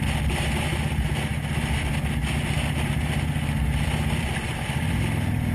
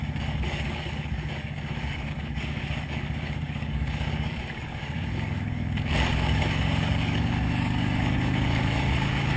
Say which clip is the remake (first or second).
second